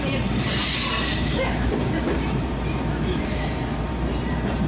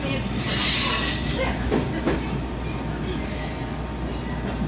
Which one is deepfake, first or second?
first